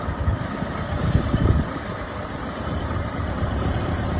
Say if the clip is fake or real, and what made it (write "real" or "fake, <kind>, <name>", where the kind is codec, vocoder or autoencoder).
fake, vocoder, BigVGAN v2